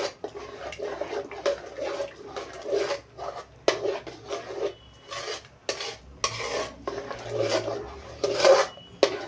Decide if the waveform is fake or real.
real